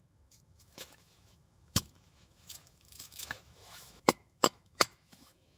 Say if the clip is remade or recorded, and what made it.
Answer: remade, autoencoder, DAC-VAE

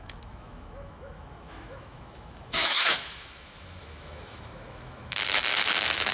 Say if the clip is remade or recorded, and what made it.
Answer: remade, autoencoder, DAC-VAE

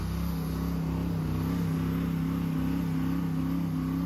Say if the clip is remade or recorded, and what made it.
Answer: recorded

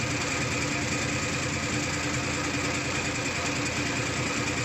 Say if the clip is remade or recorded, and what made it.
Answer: recorded